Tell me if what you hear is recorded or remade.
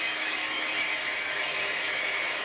remade